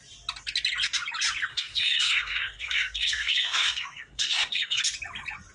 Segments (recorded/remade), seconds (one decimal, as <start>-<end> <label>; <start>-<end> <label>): 0.0-1.5 recorded; 1.5-4.8 remade; 4.8-5.5 recorded